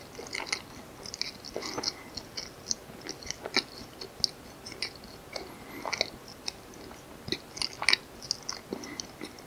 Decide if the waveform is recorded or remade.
recorded